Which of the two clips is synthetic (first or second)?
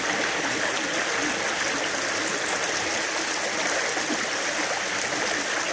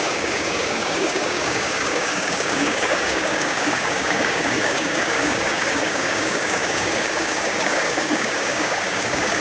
second